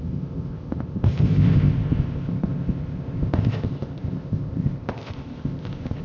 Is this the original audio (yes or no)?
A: no